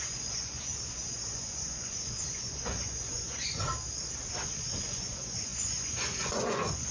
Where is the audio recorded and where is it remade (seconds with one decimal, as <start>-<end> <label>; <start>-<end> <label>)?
0.0-3.7 remade; 3.7-4.4 recorded; 4.4-6.9 remade